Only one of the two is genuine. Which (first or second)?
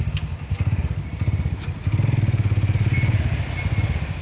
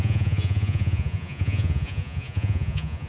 first